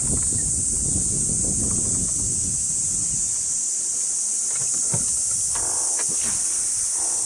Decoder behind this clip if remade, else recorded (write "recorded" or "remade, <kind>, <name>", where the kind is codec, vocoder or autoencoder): recorded